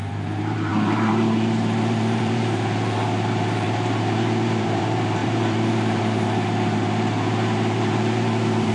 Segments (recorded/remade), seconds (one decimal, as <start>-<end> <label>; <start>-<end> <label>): 0.0-8.7 remade